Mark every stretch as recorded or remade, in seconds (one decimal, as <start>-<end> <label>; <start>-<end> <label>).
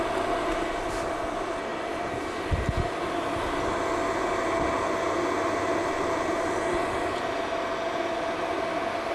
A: 0.0-9.1 recorded